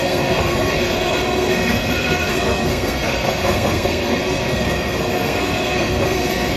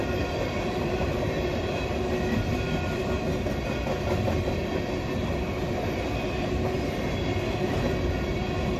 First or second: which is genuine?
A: second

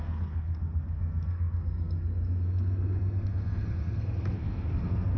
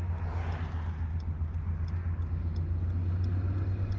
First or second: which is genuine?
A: second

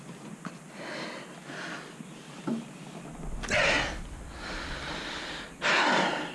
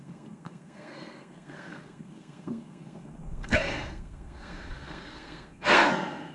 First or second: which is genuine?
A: first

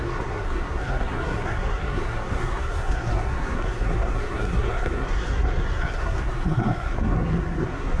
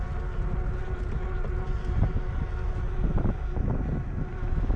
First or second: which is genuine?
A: second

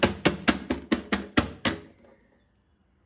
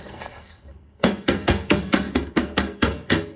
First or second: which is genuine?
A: first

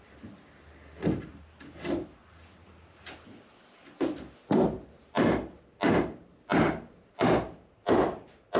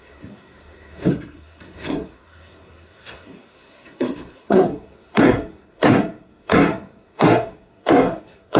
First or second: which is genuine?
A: first